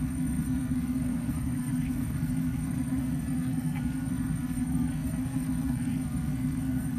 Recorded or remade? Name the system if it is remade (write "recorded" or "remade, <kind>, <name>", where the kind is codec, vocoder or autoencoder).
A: remade, codec, SNAC